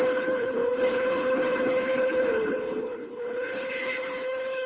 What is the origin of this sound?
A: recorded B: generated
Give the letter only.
B